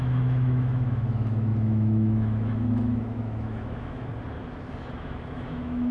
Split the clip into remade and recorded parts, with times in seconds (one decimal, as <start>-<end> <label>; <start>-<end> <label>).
0.0-4.1 remade; 4.1-4.9 recorded; 4.9-5.9 remade